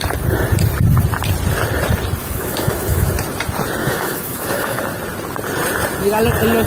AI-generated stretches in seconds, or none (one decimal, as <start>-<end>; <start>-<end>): 2.2-3.1; 3.8-4.8